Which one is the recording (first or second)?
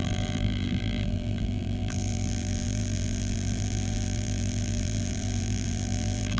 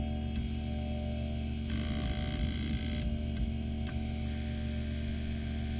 second